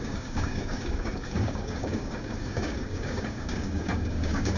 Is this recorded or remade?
remade